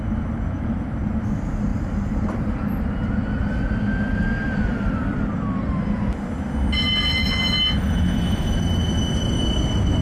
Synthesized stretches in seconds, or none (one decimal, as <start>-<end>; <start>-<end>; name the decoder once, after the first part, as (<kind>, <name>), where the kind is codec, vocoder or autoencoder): 1.7-2.5 (vocoder, BigVGAN v2); 4.4-5.3